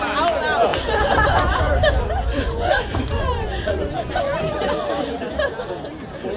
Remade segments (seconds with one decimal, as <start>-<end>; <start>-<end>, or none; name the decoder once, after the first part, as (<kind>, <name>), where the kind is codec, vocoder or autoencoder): 0.7-1.7 (vocoder, Vocos); 2.3-4.7